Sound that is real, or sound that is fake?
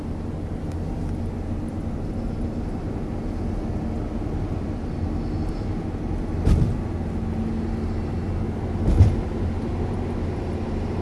real